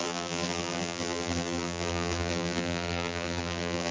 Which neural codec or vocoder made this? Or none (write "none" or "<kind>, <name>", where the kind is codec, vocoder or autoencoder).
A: vocoder, BigVGAN v2